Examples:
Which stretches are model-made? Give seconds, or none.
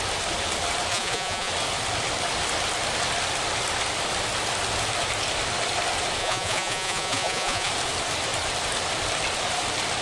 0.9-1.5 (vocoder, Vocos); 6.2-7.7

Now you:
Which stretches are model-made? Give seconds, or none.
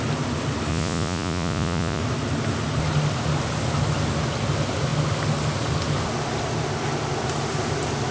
0.7-2.0 (vocoder, Vocos)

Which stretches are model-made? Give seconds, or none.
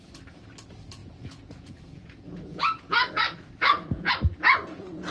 1.0-4.1 (vocoder, Vocos)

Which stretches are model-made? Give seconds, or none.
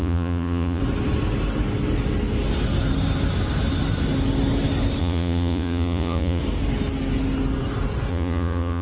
0.0-0.8 (vocoder, Vocos); 5.0-6.4; 8.1-8.8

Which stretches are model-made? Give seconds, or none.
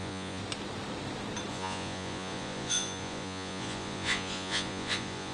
0.0-0.4 (vocoder, Vocos); 1.5-5.3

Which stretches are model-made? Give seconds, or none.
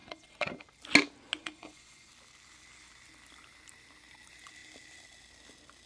0.0-0.6 (vocoder, Vocos); 1.4-2.1